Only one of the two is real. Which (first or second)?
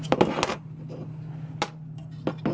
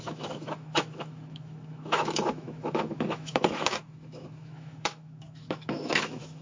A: first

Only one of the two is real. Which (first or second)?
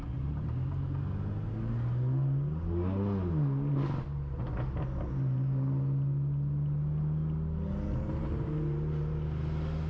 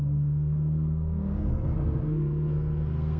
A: first